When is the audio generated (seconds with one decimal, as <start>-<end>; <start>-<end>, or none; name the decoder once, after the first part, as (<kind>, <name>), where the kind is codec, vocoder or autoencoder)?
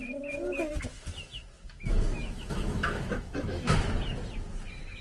0.9-3.9 (autoencoder, DAC-VAE)